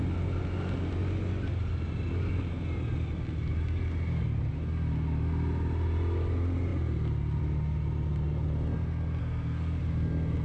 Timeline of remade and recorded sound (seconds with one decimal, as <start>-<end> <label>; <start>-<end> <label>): 0.0-9.2 recorded; 9.2-9.8 remade; 9.8-10.4 recorded